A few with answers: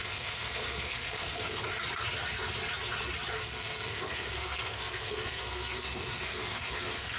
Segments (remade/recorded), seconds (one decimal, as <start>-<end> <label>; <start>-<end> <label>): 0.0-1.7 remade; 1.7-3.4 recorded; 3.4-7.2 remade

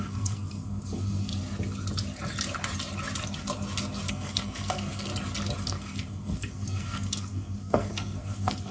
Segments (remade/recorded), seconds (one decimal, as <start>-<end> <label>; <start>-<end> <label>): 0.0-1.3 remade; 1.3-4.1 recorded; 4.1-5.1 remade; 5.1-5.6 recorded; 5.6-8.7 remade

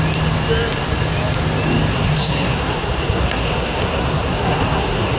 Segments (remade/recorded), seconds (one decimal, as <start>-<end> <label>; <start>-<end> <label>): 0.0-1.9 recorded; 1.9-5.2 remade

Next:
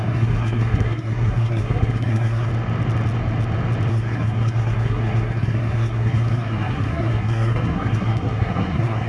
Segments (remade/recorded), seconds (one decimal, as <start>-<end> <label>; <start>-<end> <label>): 0.0-2.5 remade; 2.5-3.9 recorded; 3.9-9.1 remade